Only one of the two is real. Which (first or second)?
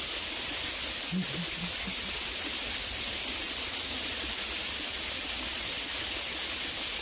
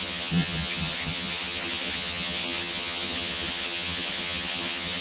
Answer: first